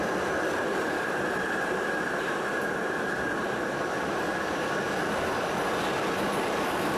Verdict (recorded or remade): remade